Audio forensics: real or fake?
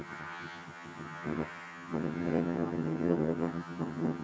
fake